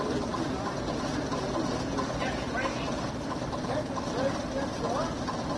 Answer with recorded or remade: recorded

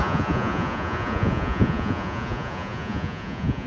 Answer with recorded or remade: remade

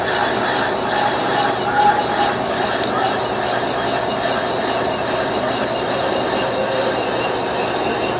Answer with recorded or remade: recorded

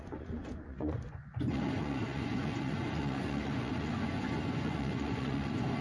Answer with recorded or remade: remade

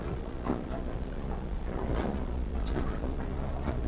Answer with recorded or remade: remade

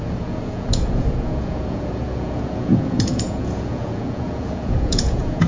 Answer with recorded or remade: remade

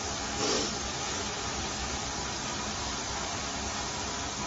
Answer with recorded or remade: recorded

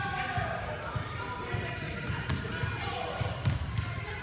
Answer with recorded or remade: recorded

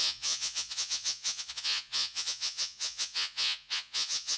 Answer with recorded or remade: remade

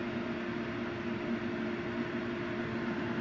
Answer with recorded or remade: recorded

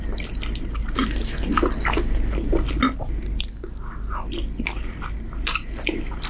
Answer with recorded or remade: recorded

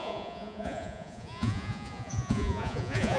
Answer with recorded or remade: remade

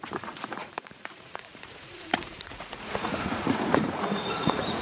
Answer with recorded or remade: remade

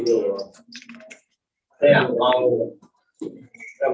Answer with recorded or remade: recorded